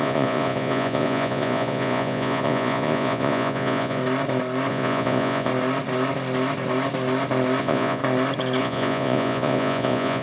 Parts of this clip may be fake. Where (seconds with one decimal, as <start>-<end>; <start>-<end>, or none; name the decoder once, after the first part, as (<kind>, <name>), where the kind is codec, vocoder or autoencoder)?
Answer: 0.0-4.0 (vocoder, Vocos); 4.7-5.5; 7.6-8.0; 8.6-10.2